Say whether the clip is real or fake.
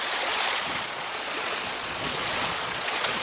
fake